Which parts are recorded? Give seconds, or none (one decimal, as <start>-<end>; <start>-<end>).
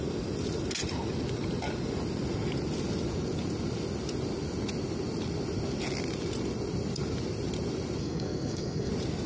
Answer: 0.0-8.0; 8.9-9.3